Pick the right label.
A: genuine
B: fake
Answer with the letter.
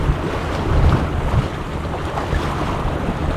B